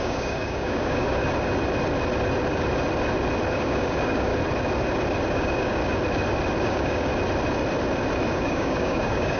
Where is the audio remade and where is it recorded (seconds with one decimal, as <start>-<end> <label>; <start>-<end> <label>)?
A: 0.0-1.2 remade; 1.2-3.5 recorded; 3.5-4.3 remade; 4.3-5.3 recorded; 5.3-5.8 remade; 5.8-6.6 recorded; 6.6-7.1 remade; 7.1-8.4 recorded; 8.4-9.4 remade